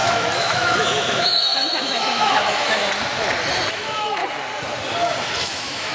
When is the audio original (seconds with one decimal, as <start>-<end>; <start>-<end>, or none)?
2.8-3.7; 4.2-5.4